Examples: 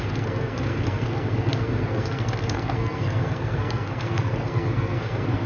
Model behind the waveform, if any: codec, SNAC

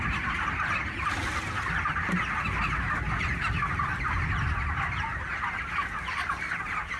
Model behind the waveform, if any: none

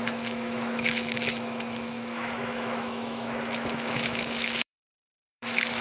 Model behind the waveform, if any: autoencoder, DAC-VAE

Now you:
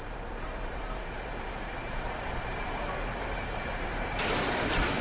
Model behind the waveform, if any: vocoder, BigVGAN v2